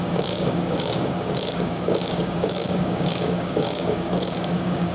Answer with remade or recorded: remade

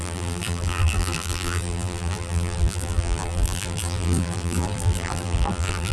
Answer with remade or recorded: remade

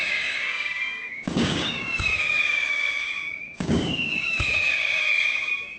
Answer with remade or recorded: remade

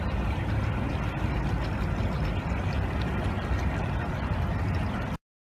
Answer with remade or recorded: recorded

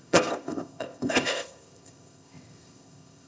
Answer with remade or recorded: remade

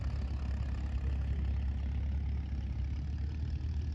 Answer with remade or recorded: recorded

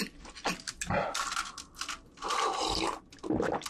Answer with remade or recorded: recorded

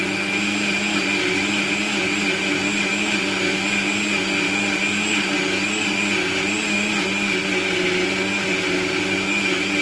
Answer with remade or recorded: recorded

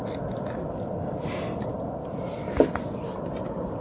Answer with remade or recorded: recorded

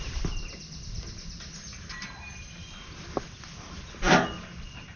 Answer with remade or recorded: recorded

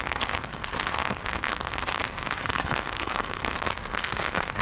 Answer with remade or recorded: remade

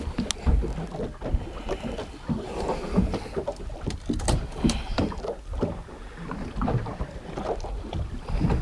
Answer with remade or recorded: recorded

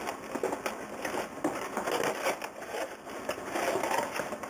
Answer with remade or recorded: recorded